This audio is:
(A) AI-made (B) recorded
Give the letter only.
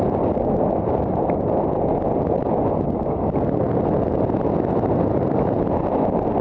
B